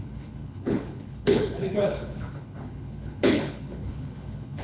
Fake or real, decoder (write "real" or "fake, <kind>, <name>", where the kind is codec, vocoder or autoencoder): fake, codec, HILCodec